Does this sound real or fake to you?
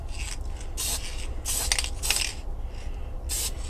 real